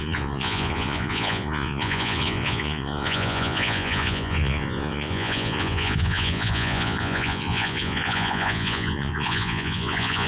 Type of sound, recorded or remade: remade